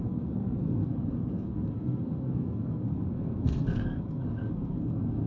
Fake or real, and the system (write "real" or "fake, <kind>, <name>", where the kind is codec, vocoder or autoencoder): fake, codec, SNAC